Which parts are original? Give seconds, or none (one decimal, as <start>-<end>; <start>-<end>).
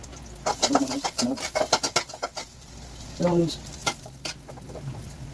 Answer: 0.0-5.3